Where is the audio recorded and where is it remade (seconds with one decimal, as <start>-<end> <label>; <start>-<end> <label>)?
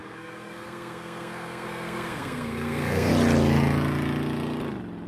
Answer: 0.0-3.1 remade; 3.1-5.1 recorded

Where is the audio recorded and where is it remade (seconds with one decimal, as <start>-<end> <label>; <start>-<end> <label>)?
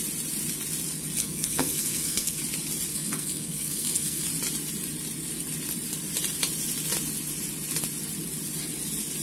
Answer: 0.0-1.2 recorded; 1.2-2.4 remade; 2.4-2.9 recorded; 2.9-4.2 remade; 4.2-9.2 recorded